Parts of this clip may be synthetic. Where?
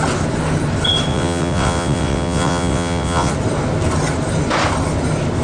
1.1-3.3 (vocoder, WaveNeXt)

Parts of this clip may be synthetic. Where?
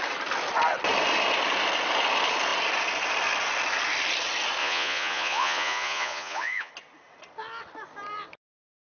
4.6-6.7 (vocoder, Vocos)